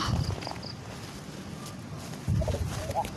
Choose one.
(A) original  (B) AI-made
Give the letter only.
A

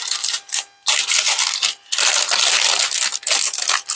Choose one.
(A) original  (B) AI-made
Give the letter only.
A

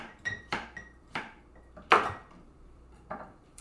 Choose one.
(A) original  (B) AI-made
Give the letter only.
B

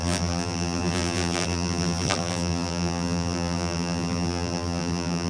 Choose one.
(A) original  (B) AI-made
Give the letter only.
B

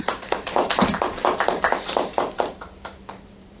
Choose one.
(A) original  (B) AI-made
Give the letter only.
B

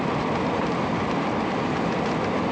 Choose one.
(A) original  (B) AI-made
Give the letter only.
A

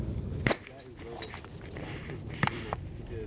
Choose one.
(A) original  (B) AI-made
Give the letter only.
A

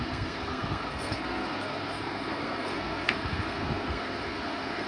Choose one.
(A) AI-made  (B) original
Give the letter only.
A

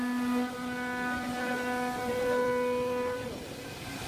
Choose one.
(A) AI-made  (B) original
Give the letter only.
B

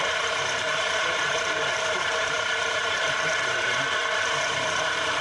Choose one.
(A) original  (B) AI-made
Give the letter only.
B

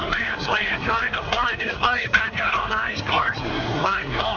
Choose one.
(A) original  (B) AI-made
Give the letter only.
B